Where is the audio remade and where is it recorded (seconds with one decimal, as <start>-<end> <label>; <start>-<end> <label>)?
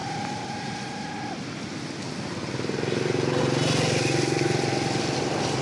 0.0-5.6 recorded